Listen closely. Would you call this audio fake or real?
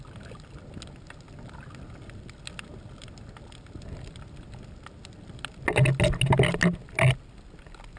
real